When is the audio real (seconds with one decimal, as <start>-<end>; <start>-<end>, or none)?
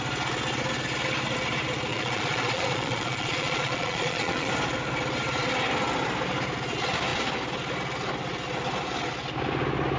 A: 0.0-1.9; 4.5-10.0